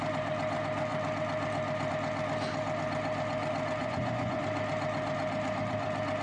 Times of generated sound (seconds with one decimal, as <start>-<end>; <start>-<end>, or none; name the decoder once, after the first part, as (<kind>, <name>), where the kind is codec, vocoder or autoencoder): 3.8-4.4 (vocoder, Vocos)